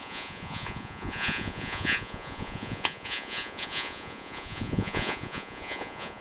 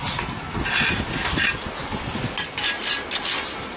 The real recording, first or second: second